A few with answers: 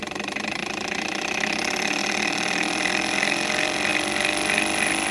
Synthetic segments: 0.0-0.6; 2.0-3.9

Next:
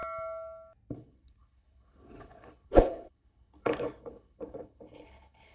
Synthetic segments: 0.9-5.5

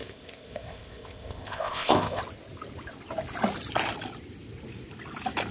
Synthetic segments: 0.0-2.2

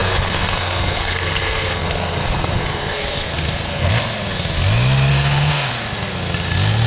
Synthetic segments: 0.0-3.9; 5.1-5.7

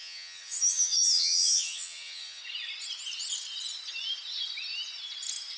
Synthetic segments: 0.0-2.4

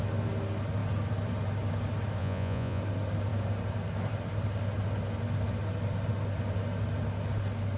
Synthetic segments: 2.2-2.8

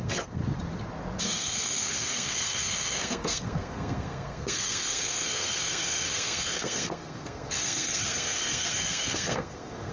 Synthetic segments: 0.0-0.4; 1.2-9.9